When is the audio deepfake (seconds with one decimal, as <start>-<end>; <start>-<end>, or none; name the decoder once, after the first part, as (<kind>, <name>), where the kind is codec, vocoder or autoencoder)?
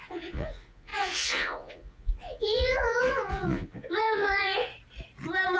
0.0-4.7 (vocoder, Vocos)